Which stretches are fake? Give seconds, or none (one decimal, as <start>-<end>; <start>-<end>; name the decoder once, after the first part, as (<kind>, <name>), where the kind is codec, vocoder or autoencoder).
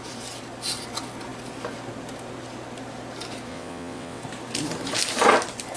3.5-4.2 (vocoder, WaveNeXt)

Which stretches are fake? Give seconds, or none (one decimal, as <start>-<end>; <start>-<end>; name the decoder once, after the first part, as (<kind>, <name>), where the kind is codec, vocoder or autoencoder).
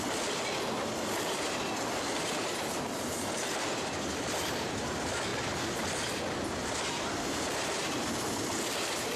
0.0-5.3 (vocoder, BigVGAN v2); 7.2-9.2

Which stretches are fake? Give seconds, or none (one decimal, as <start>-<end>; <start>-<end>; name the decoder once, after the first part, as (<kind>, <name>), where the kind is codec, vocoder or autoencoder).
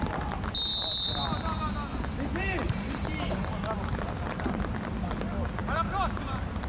2.6-3.5 (vocoder, BigVGAN v2)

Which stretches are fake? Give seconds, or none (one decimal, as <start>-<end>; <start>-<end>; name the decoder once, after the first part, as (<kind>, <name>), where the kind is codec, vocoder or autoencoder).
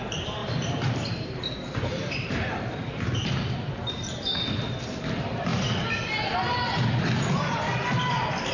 0.4-4.2 (vocoder, BigVGAN v2)